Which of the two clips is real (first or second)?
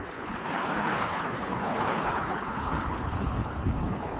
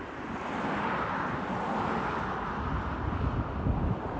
second